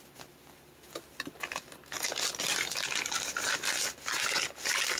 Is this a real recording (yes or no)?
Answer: yes